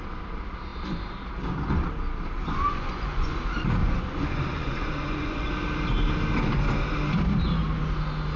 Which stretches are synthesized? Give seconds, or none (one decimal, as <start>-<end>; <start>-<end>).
2.4-3.4; 3.8-5.5